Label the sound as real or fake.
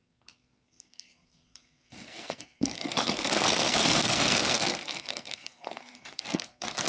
fake